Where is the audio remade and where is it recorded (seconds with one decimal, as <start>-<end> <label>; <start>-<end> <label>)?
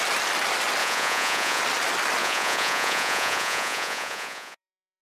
0.0-0.8 recorded; 0.8-1.6 remade; 1.6-2.2 recorded; 2.2-5.0 remade